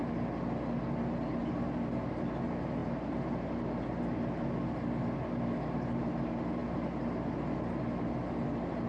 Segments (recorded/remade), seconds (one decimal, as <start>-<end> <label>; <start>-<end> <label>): 0.0-1.4 recorded; 1.4-2.1 remade; 2.1-6.6 recorded; 6.6-7.9 remade; 7.9-8.9 recorded